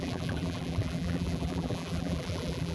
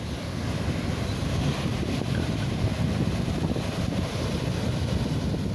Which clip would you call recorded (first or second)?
second